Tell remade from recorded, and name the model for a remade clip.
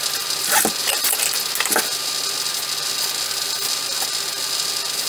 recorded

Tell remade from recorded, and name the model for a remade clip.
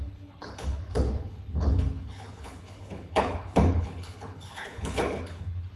remade, codec, HILCodec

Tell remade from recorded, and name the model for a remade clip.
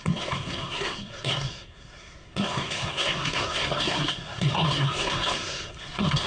remade, codec, SNAC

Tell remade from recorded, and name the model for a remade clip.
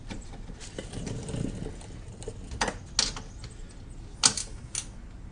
recorded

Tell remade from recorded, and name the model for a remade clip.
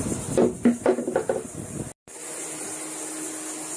recorded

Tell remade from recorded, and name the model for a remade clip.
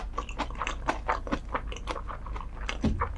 recorded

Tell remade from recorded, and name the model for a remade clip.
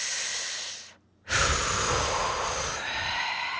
recorded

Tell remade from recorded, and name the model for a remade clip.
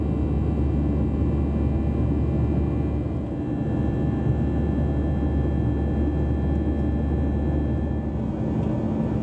recorded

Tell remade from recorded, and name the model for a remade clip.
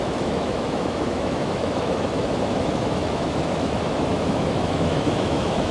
remade, autoencoder, DAC-VAE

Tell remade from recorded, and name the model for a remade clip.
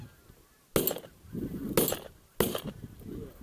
recorded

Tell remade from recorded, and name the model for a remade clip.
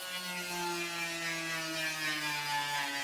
recorded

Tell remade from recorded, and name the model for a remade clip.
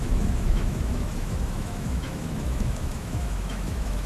remade, autoencoder, DAC-VAE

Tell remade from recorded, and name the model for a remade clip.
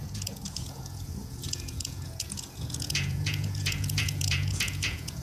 remade, vocoder, Vocos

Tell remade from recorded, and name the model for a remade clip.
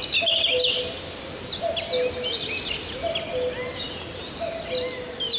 recorded